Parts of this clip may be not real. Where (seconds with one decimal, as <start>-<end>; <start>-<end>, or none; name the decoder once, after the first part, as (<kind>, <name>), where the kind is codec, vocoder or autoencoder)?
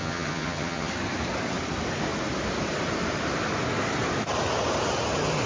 0.0-0.9 (vocoder, HiFi-GAN)